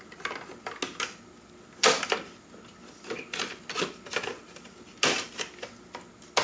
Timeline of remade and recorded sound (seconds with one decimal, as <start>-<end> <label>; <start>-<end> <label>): 0.0-6.4 recorded